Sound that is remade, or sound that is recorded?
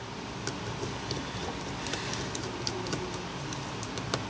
recorded